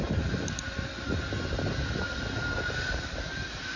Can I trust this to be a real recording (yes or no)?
yes